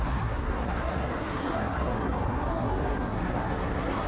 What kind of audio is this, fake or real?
fake